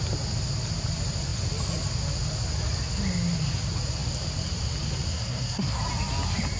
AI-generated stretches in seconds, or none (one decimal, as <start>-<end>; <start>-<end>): 5.1-5.8